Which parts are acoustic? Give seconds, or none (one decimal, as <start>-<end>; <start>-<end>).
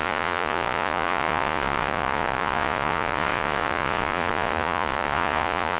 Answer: none